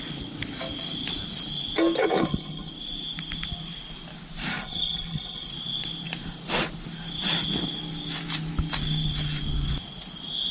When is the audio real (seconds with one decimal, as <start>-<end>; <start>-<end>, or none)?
0.0-2.0; 2.7-4.5; 5.5-10.5